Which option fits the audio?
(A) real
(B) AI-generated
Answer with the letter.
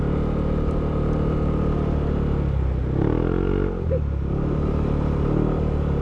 A